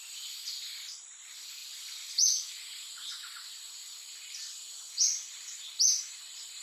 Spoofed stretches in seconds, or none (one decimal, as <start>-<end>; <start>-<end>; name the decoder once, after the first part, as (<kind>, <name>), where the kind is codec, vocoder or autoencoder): none